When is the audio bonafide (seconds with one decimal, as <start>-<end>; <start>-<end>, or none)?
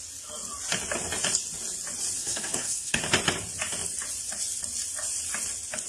0.0-2.2; 3.0-5.9